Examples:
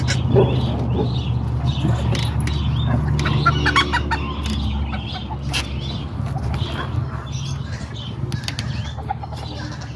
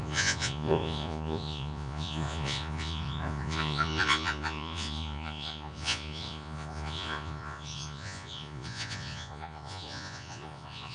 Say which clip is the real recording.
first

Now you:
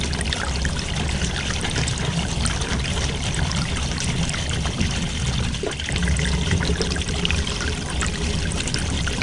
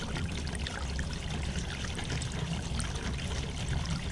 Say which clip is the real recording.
second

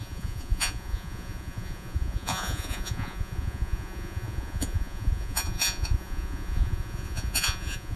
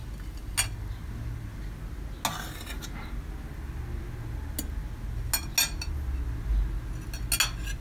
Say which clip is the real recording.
second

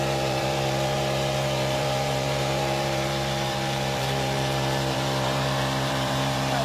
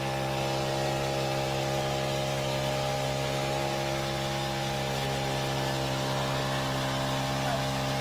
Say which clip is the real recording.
second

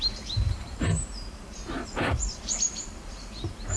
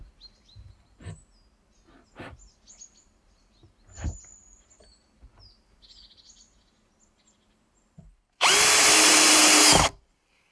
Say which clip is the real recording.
second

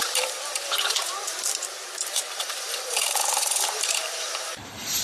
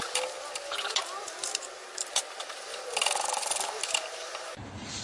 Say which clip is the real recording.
second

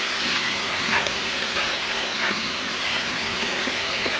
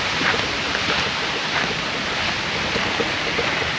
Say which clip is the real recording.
second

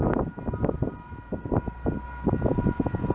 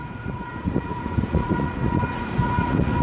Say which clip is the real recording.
first